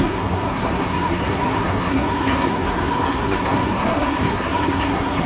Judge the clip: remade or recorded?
remade